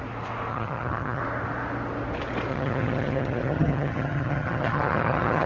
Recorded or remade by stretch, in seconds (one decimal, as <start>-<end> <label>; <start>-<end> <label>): 0.0-0.5 recorded; 0.5-1.2 remade; 1.2-2.5 recorded; 2.5-5.5 remade